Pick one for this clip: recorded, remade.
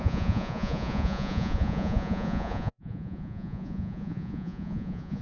remade